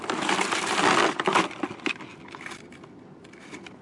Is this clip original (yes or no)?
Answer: yes